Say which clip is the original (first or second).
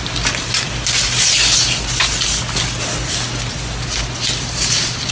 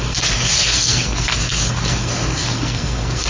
first